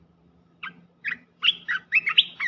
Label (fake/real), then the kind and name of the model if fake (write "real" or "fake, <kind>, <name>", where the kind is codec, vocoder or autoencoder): fake, vocoder, BigVGAN v2